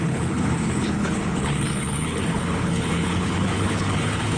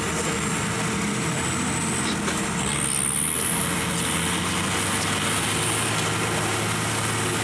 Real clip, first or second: second